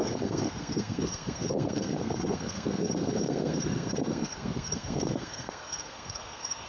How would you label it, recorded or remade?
remade